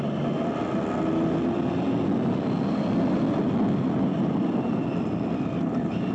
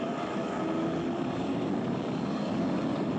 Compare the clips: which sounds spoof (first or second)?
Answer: second